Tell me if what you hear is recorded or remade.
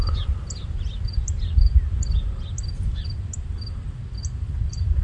recorded